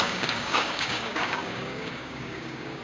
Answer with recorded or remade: remade